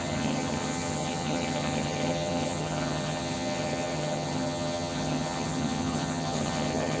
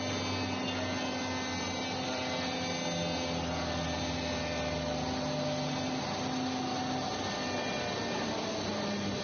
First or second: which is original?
second